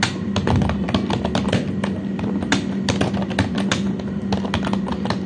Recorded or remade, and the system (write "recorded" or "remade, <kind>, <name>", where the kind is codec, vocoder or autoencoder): recorded